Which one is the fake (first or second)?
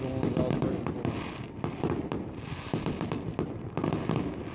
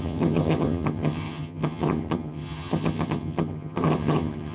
second